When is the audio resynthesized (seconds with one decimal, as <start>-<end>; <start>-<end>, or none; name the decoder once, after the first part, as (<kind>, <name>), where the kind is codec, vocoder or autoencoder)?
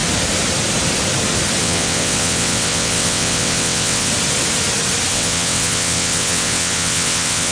1.6-4.1 (vocoder, WaveNeXt); 5.1-7.5